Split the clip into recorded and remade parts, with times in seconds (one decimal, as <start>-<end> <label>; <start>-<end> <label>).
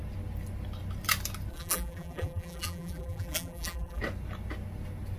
0.0-1.5 recorded; 1.5-4.0 remade; 4.0-5.2 recorded